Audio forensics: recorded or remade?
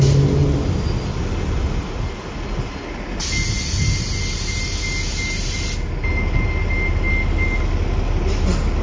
recorded